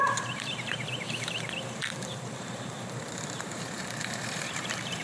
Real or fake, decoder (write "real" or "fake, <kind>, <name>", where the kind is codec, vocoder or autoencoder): fake, vocoder, BigVGAN v2